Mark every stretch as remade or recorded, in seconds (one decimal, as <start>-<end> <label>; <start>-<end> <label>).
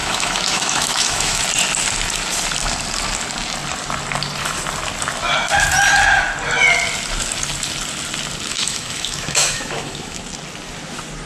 0.0-1.4 remade; 1.4-8.5 recorded; 8.5-10.2 remade; 10.2-11.3 recorded